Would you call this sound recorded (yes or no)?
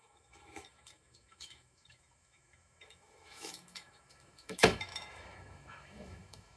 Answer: no